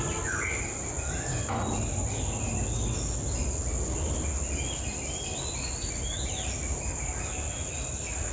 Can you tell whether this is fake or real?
real